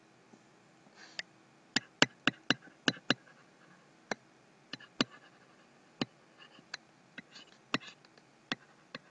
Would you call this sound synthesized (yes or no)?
no